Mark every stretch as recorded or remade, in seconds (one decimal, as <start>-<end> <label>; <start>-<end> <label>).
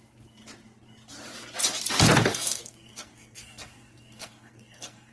0.0-2.3 recorded; 2.3-5.1 remade